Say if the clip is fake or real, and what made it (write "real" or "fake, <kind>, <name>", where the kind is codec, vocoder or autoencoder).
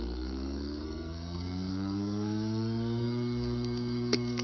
fake, codec, SNAC